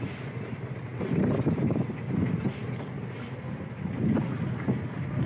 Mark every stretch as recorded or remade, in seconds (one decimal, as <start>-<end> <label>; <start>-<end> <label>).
0.0-5.3 recorded